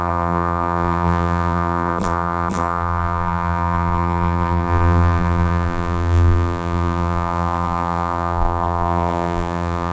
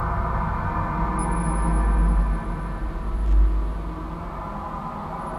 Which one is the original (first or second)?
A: second